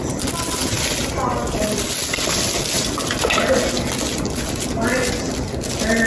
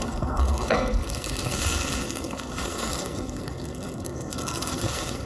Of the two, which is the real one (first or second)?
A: first